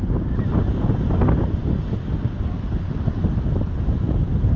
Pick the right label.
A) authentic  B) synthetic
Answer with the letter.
A